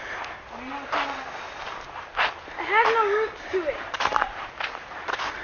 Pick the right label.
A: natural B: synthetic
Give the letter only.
A